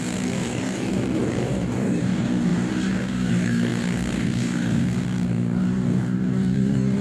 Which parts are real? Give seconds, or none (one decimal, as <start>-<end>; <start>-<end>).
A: none